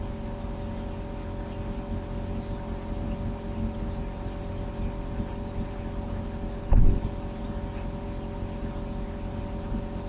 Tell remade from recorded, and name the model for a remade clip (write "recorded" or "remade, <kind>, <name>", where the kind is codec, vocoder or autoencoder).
recorded